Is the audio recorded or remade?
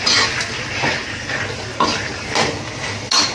recorded